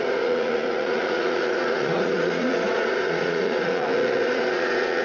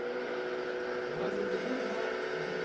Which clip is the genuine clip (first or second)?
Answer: second